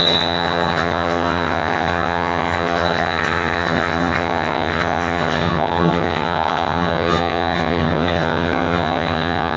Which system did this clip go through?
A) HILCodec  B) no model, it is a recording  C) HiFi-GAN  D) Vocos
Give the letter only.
C